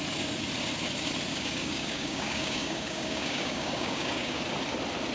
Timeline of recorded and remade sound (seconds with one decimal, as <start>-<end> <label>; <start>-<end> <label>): 0.0-1.3 recorded; 1.3-4.4 remade; 4.4-5.1 recorded